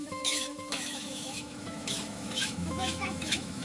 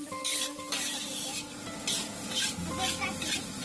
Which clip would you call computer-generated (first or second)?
first